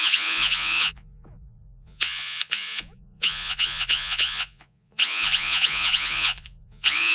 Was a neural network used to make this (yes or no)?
yes